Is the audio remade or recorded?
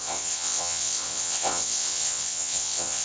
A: remade